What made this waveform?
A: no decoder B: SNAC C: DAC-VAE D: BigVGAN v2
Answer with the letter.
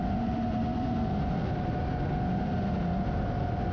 A